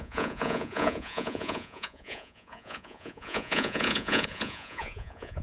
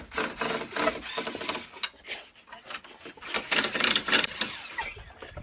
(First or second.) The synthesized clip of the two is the first